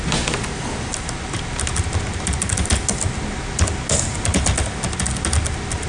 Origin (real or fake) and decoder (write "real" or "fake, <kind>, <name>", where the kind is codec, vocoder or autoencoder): real